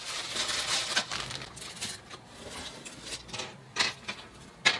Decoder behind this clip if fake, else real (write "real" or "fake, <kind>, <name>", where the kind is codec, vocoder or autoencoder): real